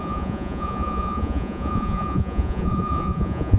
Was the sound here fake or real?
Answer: fake